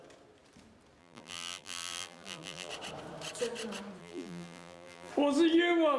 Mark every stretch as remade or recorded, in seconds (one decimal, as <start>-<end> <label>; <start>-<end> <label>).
0.0-1.0 recorded; 1.0-2.7 remade; 2.7-4.0 recorded; 4.0-5.1 remade; 5.1-6.0 recorded